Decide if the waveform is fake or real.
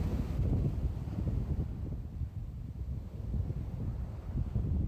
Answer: real